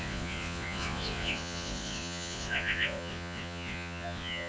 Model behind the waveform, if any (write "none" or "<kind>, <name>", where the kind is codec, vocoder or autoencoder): vocoder, Vocos